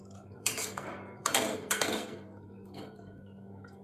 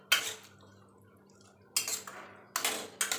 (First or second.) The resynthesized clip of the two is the first